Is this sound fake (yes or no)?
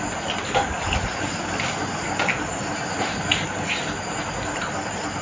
no